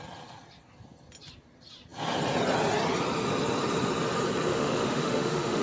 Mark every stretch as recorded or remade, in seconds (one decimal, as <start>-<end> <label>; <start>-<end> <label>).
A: 0.0-4.5 recorded; 4.5-5.6 remade